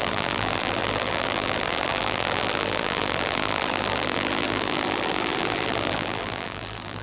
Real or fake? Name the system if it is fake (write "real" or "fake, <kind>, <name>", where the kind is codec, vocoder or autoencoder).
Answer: fake, vocoder, BigVGAN v2